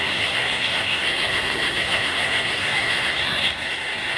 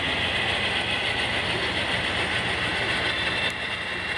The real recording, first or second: second